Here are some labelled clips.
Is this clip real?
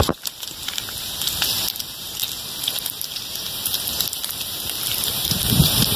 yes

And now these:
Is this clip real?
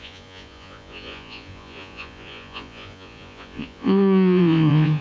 no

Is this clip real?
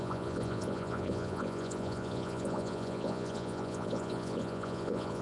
no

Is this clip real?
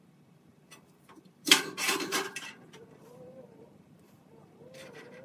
no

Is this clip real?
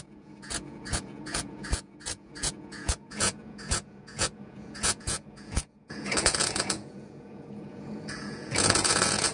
no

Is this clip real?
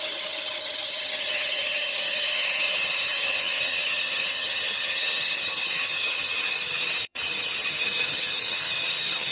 no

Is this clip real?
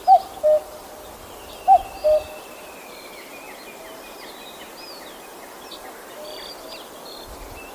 yes